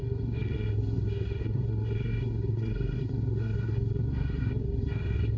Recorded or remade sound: remade